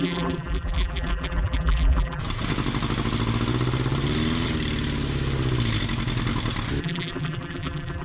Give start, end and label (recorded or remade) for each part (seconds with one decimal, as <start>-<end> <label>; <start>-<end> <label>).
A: 0.0-2.2 remade; 2.2-6.8 recorded; 6.8-8.0 remade